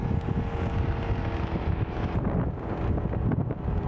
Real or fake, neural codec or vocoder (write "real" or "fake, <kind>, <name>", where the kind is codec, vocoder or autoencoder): real